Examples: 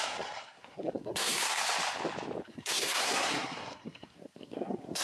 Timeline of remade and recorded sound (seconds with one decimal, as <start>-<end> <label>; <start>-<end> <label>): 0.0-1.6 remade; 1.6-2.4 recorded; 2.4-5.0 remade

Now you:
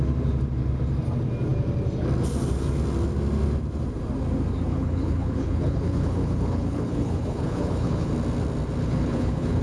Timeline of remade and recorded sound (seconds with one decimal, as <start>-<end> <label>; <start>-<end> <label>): 0.0-4.7 recorded; 4.7-8.1 remade; 8.1-8.8 recorded; 8.8-9.6 remade

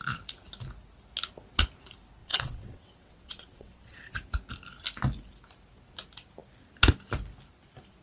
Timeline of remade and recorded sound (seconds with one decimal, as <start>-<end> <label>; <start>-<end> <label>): 0.0-2.2 recorded; 2.2-4.1 remade; 4.1-8.0 recorded

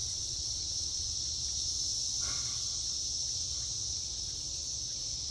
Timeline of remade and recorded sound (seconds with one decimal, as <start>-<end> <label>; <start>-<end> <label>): 0.0-1.1 remade; 1.1-5.3 recorded

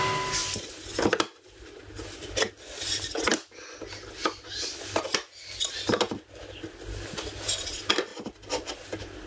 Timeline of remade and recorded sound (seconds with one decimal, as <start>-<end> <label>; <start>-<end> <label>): 0.0-0.4 recorded; 0.4-1.8 remade; 1.8-9.3 recorded

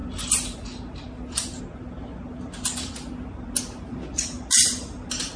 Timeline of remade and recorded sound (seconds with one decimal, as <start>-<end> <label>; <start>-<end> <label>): 0.0-5.4 recorded

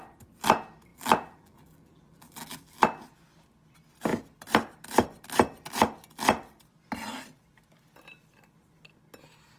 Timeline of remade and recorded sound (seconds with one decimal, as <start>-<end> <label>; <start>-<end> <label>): 0.0-0.9 recorded; 0.9-2.8 remade; 2.8-9.6 recorded

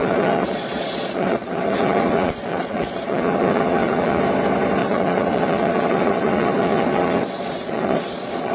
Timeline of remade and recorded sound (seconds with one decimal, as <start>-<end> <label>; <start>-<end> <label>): 0.0-4.2 remade; 4.2-4.8 recorded; 4.8-8.5 remade